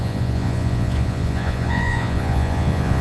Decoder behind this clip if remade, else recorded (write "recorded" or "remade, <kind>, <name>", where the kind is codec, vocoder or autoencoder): remade, vocoder, Vocos